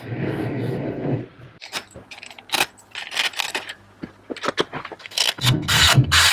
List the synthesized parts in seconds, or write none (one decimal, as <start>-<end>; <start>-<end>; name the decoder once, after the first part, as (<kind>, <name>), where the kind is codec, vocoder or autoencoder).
0.0-1.2 (codec, SNAC); 5.0-6.3